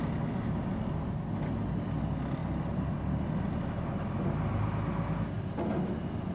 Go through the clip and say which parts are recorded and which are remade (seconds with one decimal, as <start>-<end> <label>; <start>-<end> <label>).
0.0-6.3 recorded